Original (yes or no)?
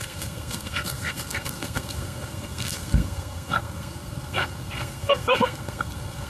no